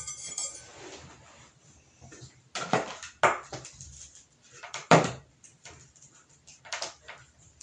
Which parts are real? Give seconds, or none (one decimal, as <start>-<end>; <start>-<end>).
0.7-3.5